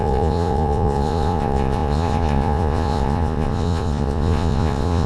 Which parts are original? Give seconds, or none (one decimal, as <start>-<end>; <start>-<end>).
none